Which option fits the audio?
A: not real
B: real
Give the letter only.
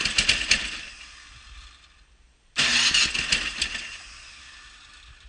B